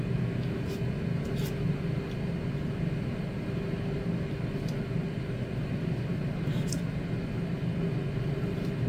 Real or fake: real